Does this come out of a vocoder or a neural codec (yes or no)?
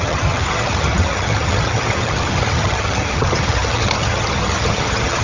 yes